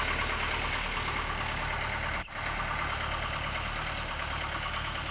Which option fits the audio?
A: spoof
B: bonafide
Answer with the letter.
B